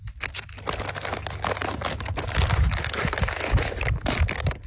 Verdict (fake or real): real